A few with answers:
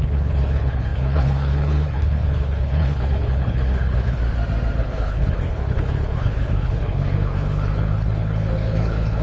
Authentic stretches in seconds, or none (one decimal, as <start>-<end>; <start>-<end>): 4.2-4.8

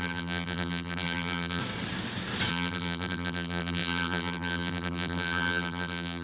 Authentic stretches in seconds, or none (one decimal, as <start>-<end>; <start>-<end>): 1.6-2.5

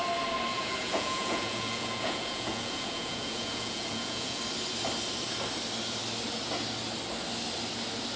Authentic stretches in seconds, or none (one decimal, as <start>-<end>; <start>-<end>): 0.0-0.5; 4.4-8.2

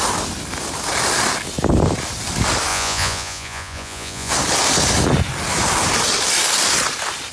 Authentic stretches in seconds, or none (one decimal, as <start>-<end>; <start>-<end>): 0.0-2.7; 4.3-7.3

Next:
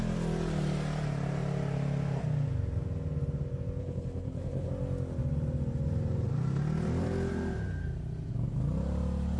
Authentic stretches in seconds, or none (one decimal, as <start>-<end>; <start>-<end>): 0.0-3.8; 4.7-9.4